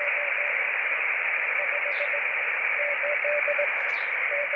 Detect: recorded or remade remade